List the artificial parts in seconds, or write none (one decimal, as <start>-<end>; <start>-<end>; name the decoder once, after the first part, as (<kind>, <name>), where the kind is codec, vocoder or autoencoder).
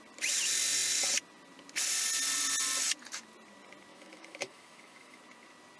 3.9-5.2 (autoencoder, DAC-VAE)